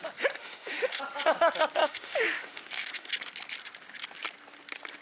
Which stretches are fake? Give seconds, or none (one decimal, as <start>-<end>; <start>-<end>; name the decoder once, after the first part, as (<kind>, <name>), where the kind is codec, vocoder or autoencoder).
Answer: 0.4-1.0 (autoencoder, DAC-VAE); 1.8-3.1